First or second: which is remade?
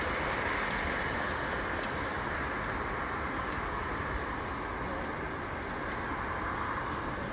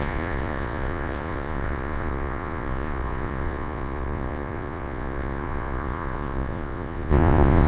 second